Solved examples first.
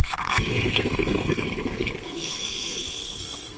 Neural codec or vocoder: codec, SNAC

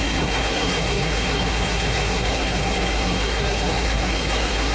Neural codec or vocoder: codec, SNAC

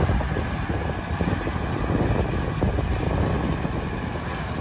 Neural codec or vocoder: none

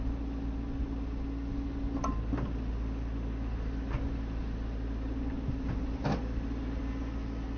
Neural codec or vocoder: none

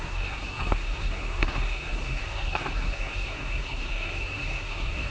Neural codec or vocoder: codec, SNAC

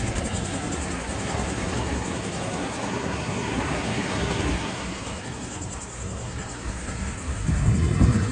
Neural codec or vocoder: codec, SNAC